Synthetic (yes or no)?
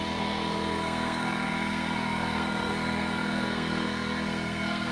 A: yes